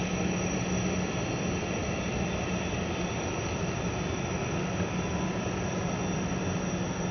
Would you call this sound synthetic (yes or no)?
no